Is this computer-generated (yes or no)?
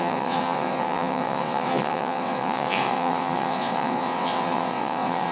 yes